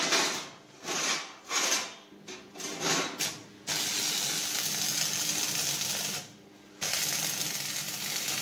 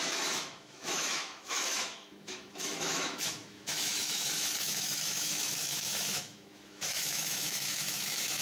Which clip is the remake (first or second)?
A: second